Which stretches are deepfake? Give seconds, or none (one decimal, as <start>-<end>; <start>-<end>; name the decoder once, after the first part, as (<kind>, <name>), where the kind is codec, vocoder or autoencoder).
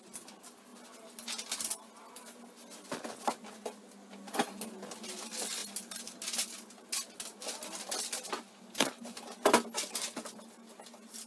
none